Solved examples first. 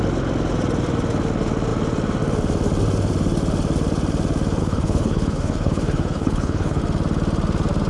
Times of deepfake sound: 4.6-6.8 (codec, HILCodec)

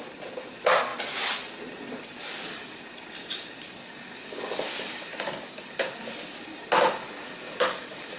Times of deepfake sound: 2.2-2.8 (codec, DAC); 3.8-6.1; 7.0-8.2

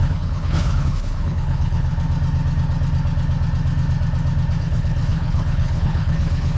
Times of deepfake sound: 0.0-1.9 (codec, HILCodec); 4.6-6.6

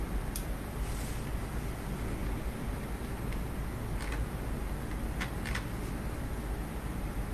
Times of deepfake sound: none

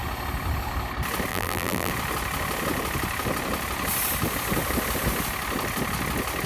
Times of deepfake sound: 1.3-1.9 (vocoder, BigVGAN v2)